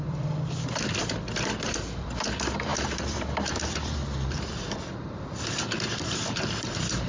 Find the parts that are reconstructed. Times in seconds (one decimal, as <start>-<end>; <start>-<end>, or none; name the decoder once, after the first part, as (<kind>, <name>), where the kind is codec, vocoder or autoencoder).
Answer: 0.0-7.1 (vocoder, BigVGAN v2)